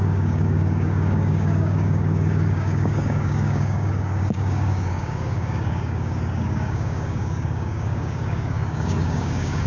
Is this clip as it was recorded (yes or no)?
no